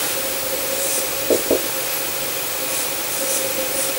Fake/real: real